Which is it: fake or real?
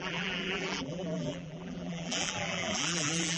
fake